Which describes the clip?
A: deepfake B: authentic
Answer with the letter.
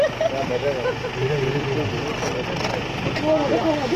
B